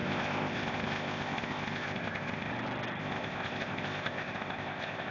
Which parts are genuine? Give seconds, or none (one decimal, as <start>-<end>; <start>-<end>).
2.5-3.0